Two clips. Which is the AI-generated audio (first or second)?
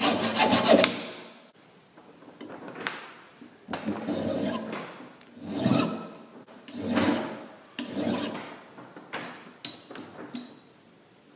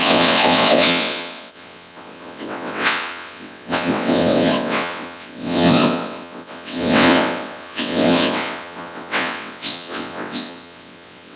second